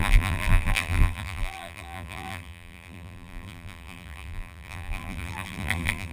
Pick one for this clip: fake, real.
fake